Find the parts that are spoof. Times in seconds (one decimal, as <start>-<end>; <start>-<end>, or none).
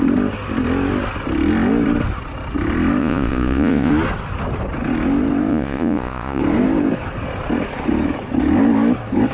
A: 3.0-3.9; 5.5-6.4